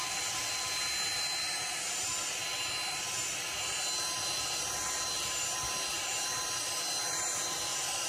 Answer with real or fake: real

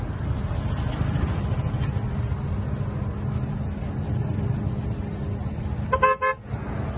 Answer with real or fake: real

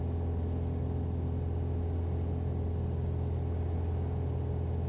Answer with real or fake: real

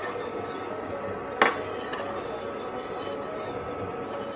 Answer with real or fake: real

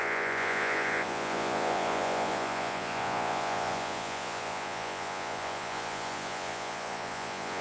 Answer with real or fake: fake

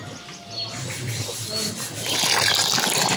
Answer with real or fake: real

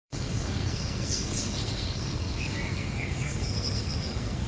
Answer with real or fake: fake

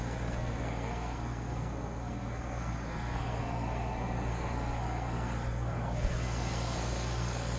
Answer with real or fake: fake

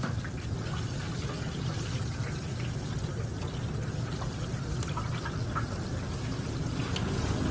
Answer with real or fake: real